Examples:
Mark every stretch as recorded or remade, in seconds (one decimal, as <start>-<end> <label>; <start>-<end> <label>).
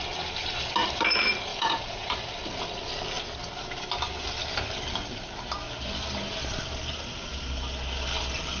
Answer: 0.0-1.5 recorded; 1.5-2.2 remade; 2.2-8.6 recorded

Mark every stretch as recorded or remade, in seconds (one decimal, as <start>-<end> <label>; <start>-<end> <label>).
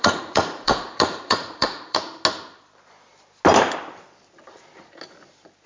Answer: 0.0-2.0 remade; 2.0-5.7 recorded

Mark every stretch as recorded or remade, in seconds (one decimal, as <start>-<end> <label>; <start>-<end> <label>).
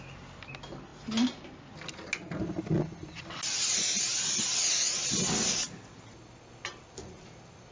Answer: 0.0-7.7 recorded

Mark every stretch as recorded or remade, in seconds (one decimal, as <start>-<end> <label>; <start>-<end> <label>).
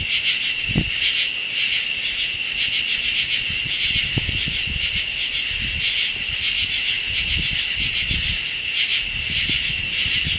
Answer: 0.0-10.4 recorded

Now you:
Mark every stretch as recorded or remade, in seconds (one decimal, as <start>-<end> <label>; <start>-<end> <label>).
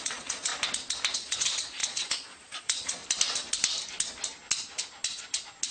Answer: 0.0-0.5 remade; 0.5-1.1 recorded; 1.1-3.0 remade; 3.0-5.7 recorded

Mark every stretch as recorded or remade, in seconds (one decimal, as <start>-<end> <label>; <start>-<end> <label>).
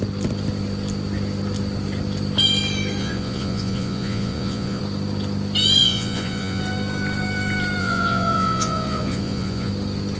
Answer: 0.0-3.0 recorded; 3.0-4.8 remade; 4.8-5.8 recorded; 5.8-6.6 remade; 6.6-7.8 recorded; 7.8-9.7 remade; 9.7-10.2 recorded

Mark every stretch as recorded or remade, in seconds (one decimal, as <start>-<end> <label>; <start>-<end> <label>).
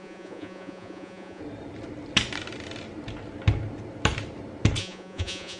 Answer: 0.0-1.4 remade; 1.4-4.8 recorded; 4.8-5.6 remade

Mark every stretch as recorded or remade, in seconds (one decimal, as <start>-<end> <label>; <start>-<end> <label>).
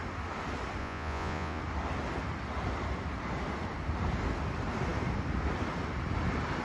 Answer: 0.0-0.8 recorded; 0.8-1.6 remade; 1.6-6.6 recorded